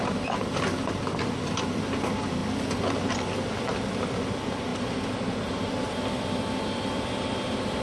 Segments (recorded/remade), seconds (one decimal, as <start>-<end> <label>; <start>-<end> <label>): 0.0-2.4 remade; 2.4-3.1 recorded; 3.1-7.8 remade